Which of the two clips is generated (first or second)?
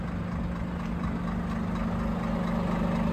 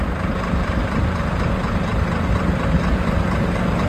second